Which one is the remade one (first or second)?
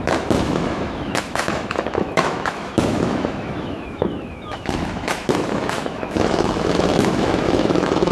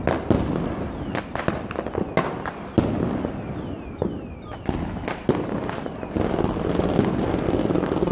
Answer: first